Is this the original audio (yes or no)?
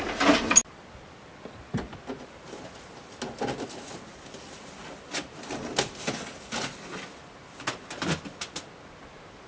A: yes